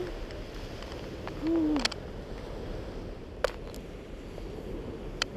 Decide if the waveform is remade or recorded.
recorded